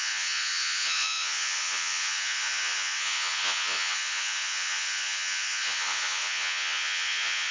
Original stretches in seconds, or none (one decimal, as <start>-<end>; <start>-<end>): none